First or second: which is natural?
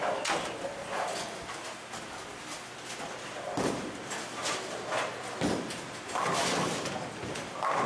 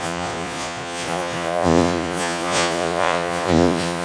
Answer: first